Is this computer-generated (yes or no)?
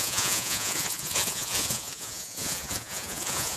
yes